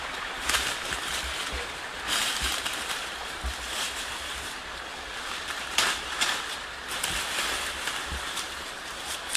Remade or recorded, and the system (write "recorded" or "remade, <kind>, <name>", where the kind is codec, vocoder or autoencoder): remade, vocoder, BigVGAN v2